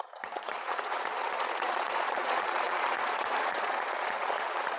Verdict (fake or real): fake